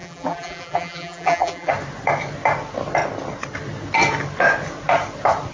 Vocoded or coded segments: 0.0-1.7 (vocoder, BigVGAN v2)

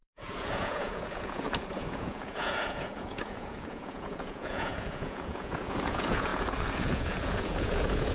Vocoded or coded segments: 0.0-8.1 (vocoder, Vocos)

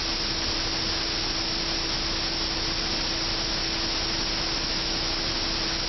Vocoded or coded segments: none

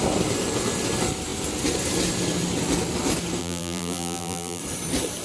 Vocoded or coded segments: 3.4-4.6 (vocoder, BigVGAN v2)

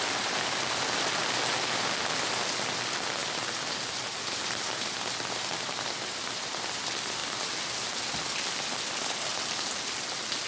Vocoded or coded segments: none